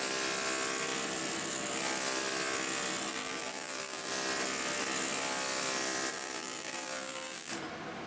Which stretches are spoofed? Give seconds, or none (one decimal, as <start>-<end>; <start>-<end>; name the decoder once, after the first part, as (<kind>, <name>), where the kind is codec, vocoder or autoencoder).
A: 3.1-4.1 (vocoder, BigVGAN v2); 6.1-7.5